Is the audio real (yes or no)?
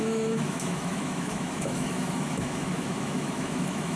no